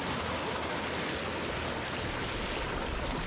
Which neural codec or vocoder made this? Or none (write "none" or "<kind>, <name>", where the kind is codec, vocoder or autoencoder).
none